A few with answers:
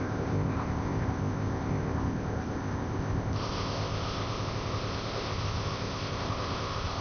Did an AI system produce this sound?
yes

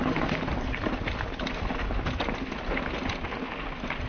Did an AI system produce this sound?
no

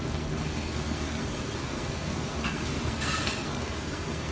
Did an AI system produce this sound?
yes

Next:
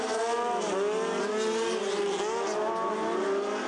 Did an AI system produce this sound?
no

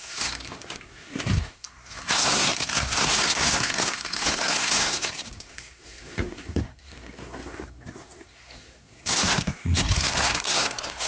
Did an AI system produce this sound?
yes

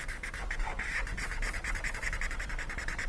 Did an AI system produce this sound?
no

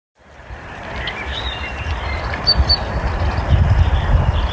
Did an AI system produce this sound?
yes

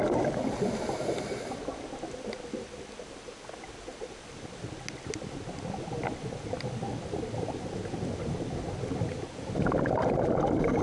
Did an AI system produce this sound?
no